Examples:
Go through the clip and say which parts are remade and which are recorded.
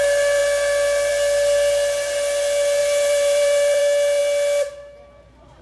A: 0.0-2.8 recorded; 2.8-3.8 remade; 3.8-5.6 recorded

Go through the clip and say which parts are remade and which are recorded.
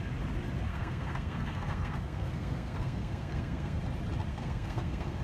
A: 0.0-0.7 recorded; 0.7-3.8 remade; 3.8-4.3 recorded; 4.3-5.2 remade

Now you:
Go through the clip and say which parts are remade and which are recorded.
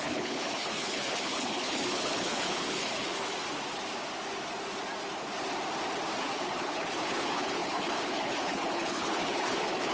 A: 0.0-3.3 remade; 3.3-6.2 recorded; 6.2-9.9 remade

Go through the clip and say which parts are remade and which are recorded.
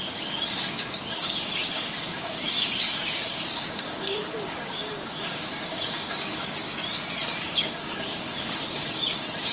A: 0.0-6.8 remade; 6.8-7.4 recorded; 7.4-9.5 remade